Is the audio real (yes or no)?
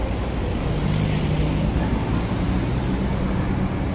yes